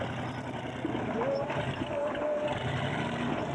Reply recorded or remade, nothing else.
recorded